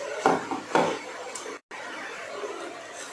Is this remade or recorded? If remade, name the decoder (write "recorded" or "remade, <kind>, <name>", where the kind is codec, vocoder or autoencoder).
recorded